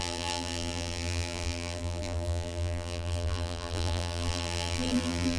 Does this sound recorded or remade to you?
remade